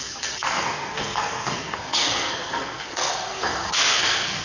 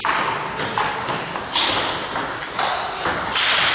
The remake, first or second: first